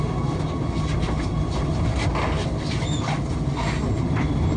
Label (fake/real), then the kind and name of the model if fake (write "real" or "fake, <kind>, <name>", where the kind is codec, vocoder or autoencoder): real